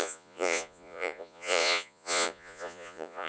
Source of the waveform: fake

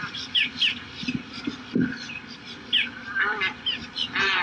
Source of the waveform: real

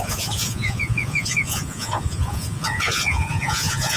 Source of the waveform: fake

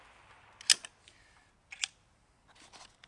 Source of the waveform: real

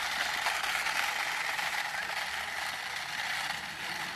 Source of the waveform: real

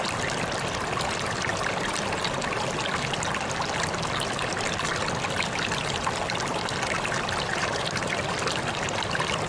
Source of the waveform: real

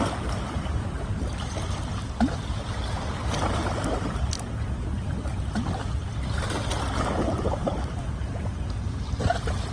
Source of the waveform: real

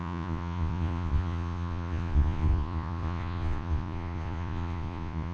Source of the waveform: fake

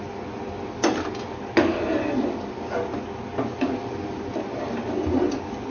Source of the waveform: real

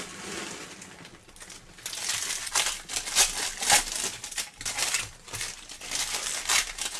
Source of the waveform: real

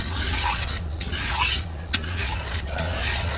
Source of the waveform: fake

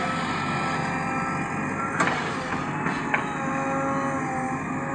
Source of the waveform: real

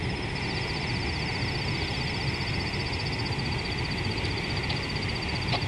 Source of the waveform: real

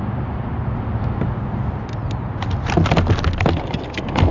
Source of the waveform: real